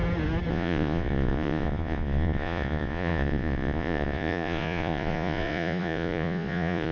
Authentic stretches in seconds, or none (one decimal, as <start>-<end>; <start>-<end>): 0.0-0.5